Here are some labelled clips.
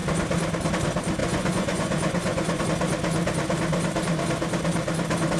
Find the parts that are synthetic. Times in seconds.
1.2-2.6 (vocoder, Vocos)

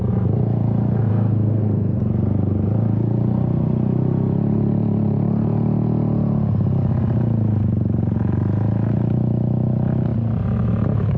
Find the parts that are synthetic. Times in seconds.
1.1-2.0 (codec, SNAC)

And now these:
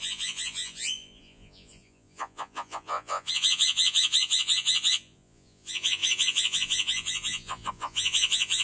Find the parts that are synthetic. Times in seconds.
0.0-8.6 (vocoder, Vocos)